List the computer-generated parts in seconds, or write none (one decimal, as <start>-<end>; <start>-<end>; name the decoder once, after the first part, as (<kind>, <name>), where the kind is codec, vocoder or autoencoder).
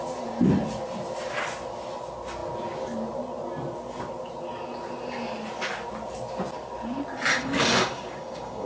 7.3-8.7 (codec, DAC)